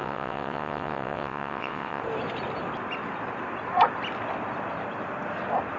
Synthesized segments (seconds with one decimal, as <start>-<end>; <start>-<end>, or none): 0.0-2.0